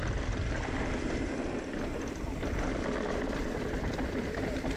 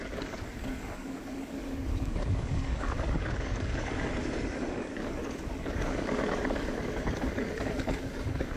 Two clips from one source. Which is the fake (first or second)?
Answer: second